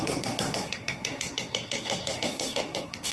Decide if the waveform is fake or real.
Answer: fake